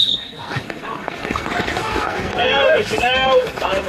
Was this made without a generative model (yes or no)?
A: no